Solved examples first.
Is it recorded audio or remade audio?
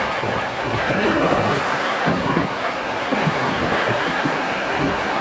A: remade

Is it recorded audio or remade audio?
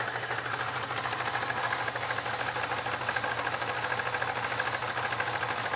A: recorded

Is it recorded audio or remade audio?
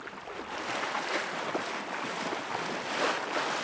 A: recorded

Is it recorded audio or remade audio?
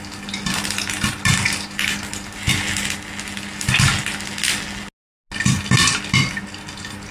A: recorded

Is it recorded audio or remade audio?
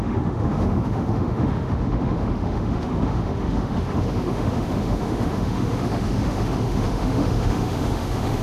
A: remade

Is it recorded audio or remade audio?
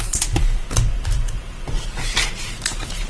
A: remade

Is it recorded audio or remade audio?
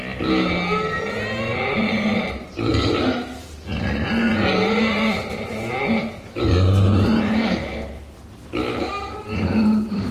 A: recorded